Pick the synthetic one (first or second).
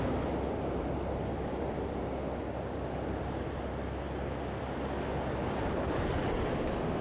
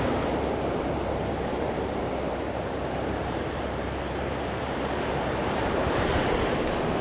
second